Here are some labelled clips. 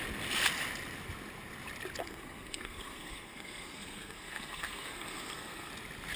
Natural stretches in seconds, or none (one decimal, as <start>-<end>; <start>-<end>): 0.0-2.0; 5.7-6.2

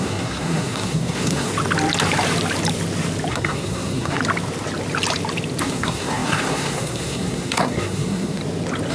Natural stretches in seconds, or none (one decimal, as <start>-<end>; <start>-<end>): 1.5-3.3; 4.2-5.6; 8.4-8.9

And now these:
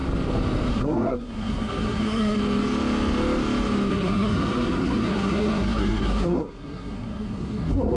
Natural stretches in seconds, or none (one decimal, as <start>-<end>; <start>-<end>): 0.0-0.7; 2.4-3.9

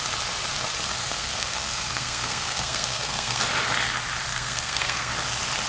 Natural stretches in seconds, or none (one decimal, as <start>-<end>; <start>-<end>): 0.0-1.0; 3.4-4.3; 5.1-5.7

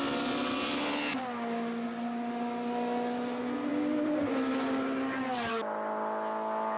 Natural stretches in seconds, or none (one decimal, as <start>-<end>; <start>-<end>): 0.0-6.8

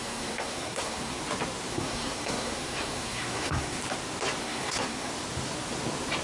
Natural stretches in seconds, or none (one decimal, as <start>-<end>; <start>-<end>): 1.2-1.7; 3.8-4.4; 5.1-6.2